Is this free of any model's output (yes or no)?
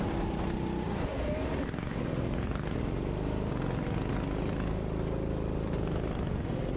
yes